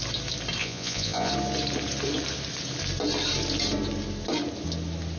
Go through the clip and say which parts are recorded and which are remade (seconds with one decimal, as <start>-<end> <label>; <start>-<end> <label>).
0.0-0.6 recorded; 0.6-1.3 remade; 1.3-5.2 recorded